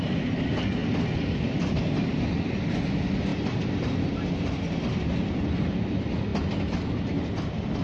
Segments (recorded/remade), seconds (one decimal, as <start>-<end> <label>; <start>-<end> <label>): 0.0-0.8 recorded; 0.8-1.8 remade; 1.8-3.3 recorded; 3.3-4.1 remade; 4.1-7.8 recorded

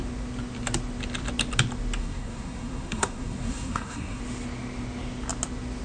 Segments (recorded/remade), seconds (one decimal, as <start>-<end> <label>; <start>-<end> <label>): 0.0-2.0 recorded; 2.0-4.2 remade; 4.2-5.8 recorded

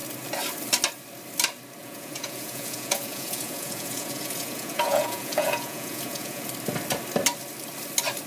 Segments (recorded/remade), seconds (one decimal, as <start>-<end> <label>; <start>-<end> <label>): 0.0-1.8 recorded; 1.8-6.4 remade; 6.4-8.3 recorded

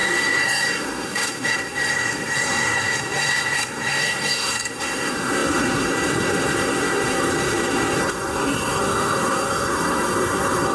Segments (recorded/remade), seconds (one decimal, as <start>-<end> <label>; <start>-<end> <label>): 0.0-10.7 remade

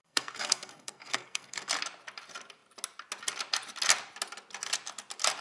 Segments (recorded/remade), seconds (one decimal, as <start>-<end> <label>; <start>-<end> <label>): 0.0-1.7 remade; 1.7-5.4 recorded